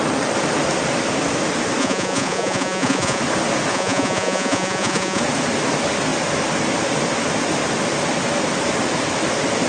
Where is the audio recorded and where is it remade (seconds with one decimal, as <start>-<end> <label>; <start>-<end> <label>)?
0.0-1.8 recorded; 1.8-3.2 remade; 3.2-3.7 recorded; 3.7-5.2 remade; 5.2-9.7 recorded